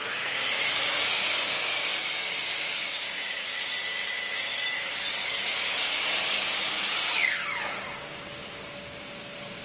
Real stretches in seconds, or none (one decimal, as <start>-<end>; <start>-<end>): none